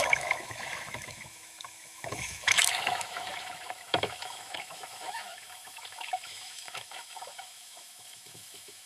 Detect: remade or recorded remade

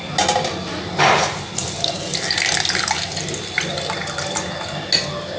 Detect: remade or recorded recorded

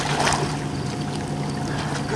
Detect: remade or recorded recorded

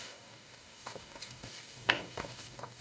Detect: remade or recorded remade